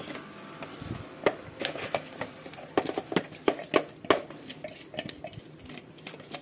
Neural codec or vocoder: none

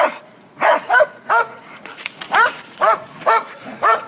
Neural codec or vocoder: vocoder, Vocos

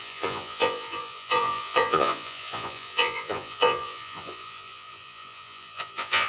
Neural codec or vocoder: vocoder, Vocos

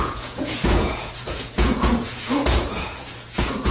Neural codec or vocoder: vocoder, Vocos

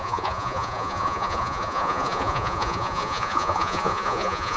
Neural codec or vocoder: vocoder, Vocos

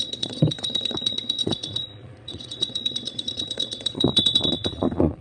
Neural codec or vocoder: vocoder, Vocos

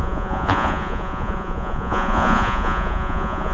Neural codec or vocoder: vocoder, Vocos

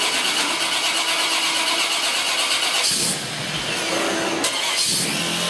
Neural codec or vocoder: none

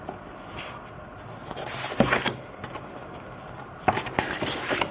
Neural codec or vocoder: none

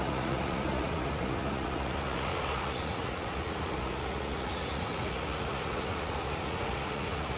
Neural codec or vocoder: vocoder, Vocos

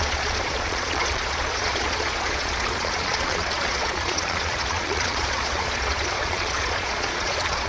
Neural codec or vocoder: vocoder, Vocos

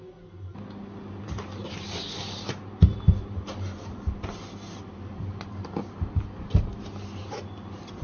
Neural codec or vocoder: none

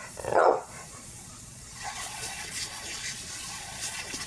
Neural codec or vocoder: vocoder, Vocos